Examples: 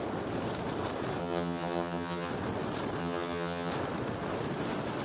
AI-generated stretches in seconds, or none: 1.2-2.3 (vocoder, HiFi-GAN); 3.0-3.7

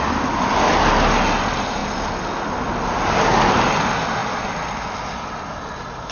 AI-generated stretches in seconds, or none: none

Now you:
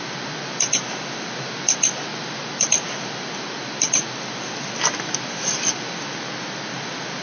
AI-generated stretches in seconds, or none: none